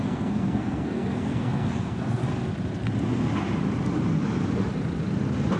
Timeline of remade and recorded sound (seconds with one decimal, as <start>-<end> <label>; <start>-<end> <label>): 0.0-2.2 remade; 2.2-5.6 recorded